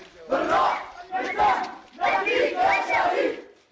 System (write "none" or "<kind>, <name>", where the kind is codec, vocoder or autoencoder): none